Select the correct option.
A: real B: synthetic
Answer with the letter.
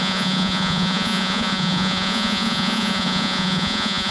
B